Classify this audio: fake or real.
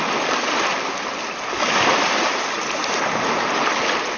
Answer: real